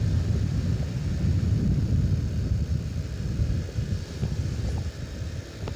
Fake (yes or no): no